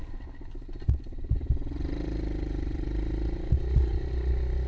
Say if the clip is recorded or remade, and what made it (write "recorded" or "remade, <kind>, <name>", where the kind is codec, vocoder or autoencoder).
recorded